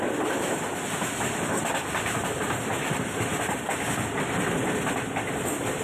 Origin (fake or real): real